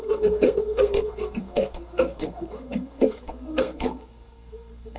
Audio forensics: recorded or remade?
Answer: remade